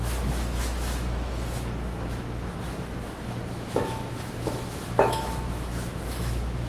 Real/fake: fake